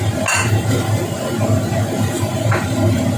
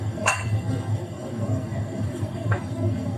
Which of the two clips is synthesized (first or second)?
second